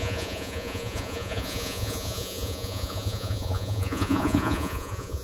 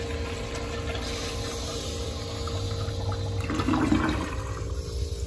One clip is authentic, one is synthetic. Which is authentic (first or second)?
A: second